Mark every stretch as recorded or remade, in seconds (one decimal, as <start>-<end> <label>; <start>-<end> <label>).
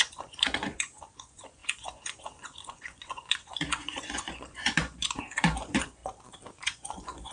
0.0-6.0 remade; 6.0-6.5 recorded; 6.5-7.3 remade